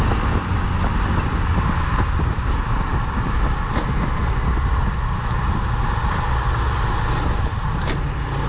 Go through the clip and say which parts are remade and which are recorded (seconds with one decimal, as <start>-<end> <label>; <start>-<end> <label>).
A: 0.0-8.5 recorded